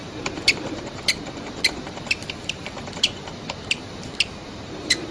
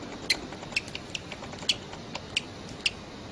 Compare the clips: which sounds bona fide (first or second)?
second